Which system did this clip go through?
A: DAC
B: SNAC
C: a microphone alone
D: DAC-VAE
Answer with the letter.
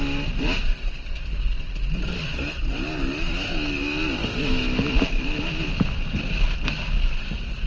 C